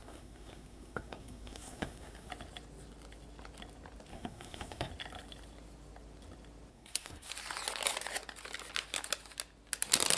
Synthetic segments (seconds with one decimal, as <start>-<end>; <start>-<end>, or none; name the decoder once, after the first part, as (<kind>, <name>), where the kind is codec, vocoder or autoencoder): 0.0-2.3 (codec, SNAC); 4.1-4.9; 6.7-7.3